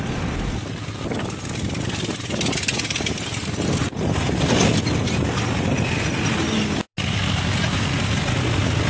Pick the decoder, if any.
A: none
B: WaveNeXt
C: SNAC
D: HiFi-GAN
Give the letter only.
A